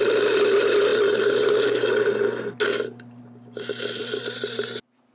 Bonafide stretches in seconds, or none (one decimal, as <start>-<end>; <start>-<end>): 0.0-5.1